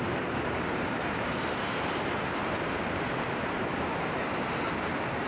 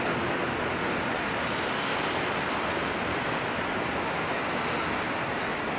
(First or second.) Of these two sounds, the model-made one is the first